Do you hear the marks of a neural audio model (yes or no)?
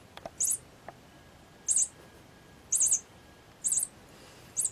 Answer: no